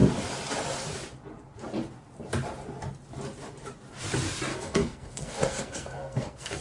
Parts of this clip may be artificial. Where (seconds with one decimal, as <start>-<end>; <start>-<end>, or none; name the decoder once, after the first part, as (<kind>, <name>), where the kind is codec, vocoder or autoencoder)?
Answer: 4.5-6.6 (codec, SNAC)